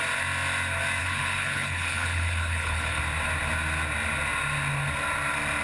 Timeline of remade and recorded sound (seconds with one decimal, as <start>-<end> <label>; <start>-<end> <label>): 0.0-1.0 recorded; 1.0-3.0 remade; 3.0-5.6 recorded